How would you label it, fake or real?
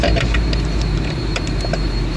fake